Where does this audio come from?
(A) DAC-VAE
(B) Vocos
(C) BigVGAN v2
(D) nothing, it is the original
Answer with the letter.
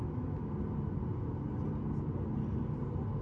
D